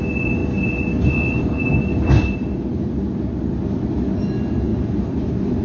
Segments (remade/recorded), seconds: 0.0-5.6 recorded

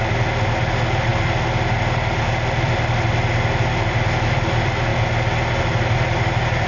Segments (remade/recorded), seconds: 0.0-6.7 recorded